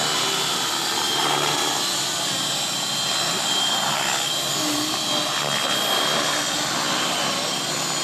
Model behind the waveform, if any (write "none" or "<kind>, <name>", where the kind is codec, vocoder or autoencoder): none